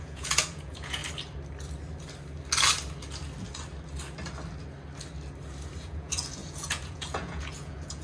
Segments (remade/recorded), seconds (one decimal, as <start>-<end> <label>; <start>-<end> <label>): 0.0-1.0 remade; 1.0-5.8 recorded; 5.8-8.0 remade